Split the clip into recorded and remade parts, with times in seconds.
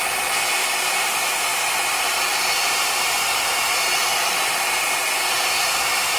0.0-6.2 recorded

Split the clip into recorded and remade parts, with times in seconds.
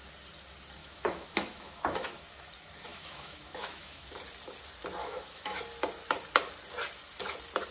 0.0-0.8 recorded; 0.8-2.5 remade; 2.5-2.9 recorded; 2.9-4.1 remade; 4.1-5.0 recorded; 5.0-5.6 remade; 5.6-7.7 recorded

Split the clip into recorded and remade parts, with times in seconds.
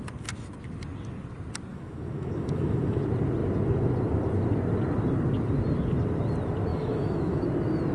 0.0-1.7 recorded; 1.7-3.0 remade; 3.0-6.7 recorded; 6.7-7.4 remade; 7.4-7.9 recorded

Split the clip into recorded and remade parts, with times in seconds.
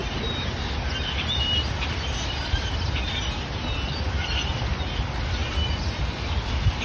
0.0-6.8 recorded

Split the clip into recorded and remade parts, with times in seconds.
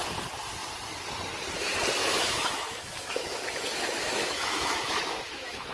0.0-2.0 recorded; 2.0-5.7 remade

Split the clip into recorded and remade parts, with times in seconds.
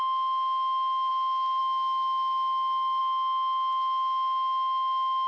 0.0-5.3 recorded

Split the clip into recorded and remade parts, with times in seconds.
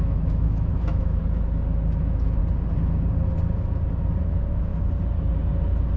0.0-1.2 remade; 1.2-2.0 recorded; 2.0-2.4 remade; 2.4-4.2 recorded; 4.2-4.7 remade; 4.7-6.0 recorded